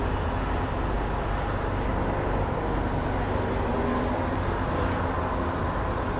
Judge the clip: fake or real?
real